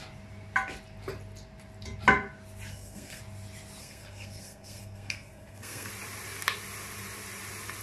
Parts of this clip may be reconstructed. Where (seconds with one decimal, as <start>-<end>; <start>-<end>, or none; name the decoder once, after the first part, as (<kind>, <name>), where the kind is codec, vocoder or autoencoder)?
2.7-3.2 (codec, SNAC); 3.8-5.9